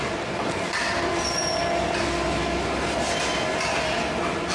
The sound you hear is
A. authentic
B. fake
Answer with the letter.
A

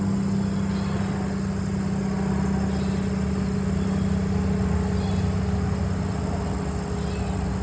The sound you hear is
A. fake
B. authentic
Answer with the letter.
B